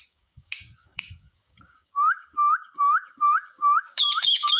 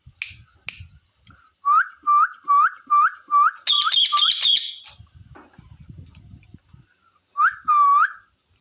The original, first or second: second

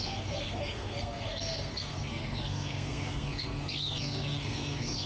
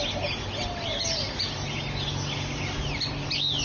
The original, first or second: second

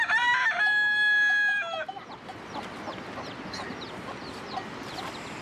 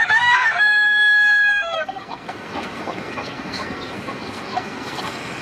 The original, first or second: first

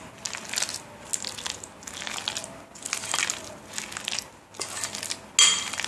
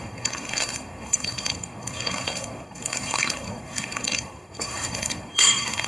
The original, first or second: first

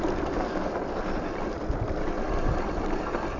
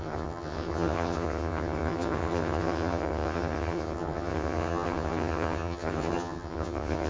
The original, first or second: first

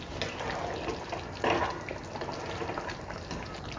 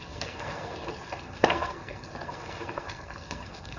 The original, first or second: first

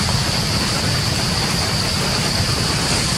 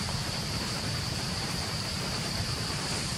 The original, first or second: first